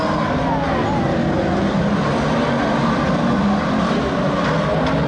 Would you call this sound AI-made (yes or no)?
no